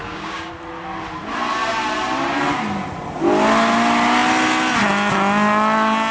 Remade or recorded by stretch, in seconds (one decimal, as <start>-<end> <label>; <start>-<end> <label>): 0.0-0.5 remade; 0.5-6.1 recorded